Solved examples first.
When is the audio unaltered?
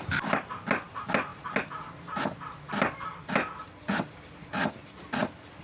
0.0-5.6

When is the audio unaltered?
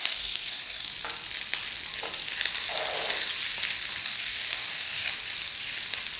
0.9-4.0; 5.1-6.2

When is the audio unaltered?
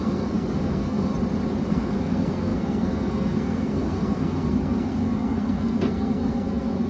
1.1-1.7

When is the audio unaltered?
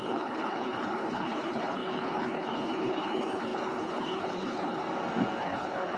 4.8-5.4